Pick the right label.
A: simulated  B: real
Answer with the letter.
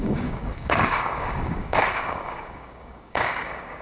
A